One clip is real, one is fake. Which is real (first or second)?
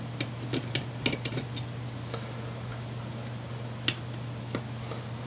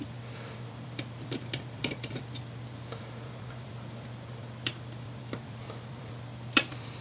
first